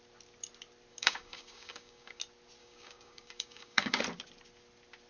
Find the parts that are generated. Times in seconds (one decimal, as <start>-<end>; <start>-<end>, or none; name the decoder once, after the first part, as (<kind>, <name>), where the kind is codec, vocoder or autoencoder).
0.9-2.2 (codec, DAC); 2.6-4.0